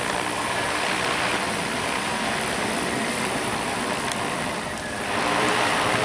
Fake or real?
fake